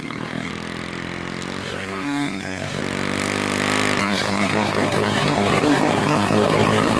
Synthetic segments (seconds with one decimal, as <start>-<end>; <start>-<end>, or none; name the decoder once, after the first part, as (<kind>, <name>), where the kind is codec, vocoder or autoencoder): 0.0-0.5 (codec, SNAC); 1.6-2.8; 4.0-7.0